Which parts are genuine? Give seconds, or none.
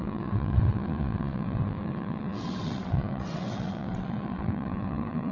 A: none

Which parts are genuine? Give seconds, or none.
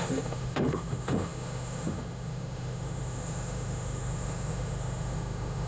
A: none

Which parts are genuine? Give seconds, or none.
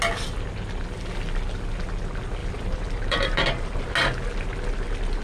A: 0.0-2.4; 3.9-5.2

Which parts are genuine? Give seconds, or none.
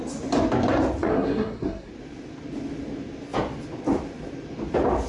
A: 0.0-1.0; 1.9-5.1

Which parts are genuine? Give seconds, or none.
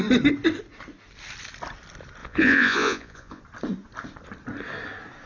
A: 0.0-2.2; 3.4-5.3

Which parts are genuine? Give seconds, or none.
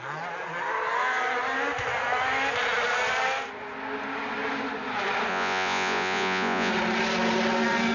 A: 0.0-5.3; 6.7-7.9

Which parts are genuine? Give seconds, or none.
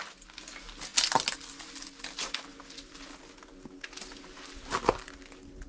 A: 0.0-5.7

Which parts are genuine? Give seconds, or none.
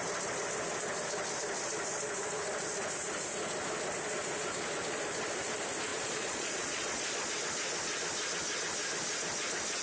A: 0.0-5.9; 7.3-9.8